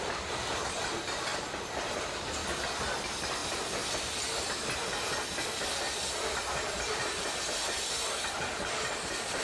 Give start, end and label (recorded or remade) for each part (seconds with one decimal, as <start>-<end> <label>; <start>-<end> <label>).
0.0-2.4 remade; 2.4-3.0 recorded; 3.0-3.4 remade; 3.4-8.3 recorded; 8.3-9.4 remade